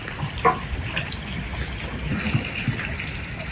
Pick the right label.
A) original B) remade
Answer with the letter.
A